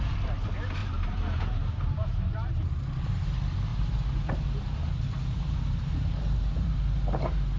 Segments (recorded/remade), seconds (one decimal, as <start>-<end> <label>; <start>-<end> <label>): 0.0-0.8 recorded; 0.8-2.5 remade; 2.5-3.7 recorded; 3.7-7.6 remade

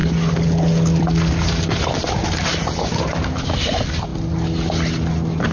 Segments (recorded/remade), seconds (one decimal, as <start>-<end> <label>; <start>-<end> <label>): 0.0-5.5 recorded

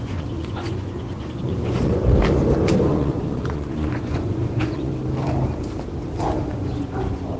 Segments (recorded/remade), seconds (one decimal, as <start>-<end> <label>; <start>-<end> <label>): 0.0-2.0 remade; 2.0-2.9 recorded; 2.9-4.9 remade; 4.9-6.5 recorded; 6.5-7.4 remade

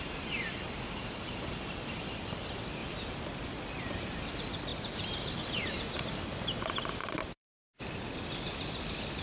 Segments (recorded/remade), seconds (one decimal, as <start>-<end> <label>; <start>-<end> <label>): 0.0-7.0 recorded; 7.0-7.6 remade; 7.6-9.2 recorded

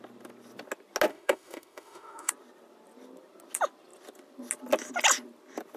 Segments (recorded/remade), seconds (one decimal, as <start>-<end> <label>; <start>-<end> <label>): 0.0-1.1 recorded; 1.1-2.3 remade; 2.3-5.8 recorded

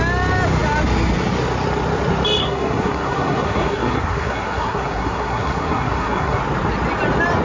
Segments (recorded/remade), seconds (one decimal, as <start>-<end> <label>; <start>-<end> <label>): 0.0-2.4 recorded; 2.4-6.4 remade; 6.4-7.4 recorded

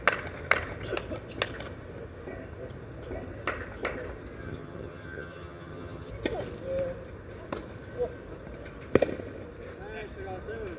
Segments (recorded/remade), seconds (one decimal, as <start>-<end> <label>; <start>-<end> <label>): 0.0-4.4 recorded; 4.4-6.1 remade; 6.1-10.8 recorded

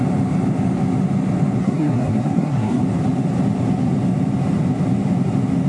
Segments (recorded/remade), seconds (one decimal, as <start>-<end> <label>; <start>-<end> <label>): 0.0-1.6 recorded; 1.6-2.8 remade; 2.8-5.7 recorded